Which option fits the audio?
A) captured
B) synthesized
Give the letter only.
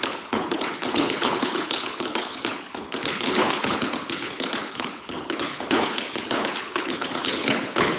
B